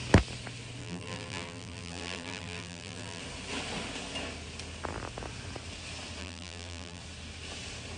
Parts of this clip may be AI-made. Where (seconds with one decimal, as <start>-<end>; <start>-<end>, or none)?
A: 0.8-3.2; 6.2-7.0